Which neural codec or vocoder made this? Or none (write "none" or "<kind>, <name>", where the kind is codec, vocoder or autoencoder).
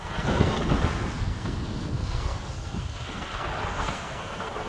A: codec, SNAC